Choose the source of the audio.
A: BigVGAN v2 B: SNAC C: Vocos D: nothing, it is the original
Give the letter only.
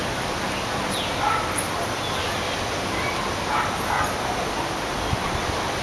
D